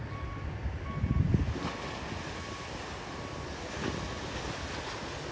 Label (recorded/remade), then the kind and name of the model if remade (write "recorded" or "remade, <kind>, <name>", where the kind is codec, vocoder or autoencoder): recorded